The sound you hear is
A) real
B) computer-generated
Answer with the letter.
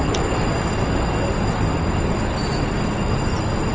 A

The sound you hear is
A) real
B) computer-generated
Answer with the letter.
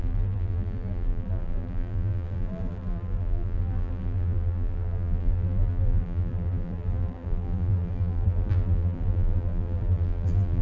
B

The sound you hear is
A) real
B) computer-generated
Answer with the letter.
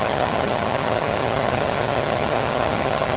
B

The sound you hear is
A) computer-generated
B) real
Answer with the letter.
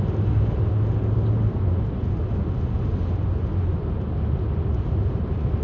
B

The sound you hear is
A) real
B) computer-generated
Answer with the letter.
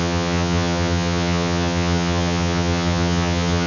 B